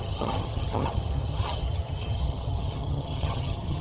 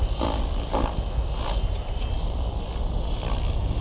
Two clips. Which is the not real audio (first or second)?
first